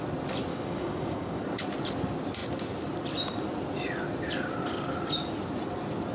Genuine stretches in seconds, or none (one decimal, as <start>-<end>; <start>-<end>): 0.0-0.5; 1.4-6.1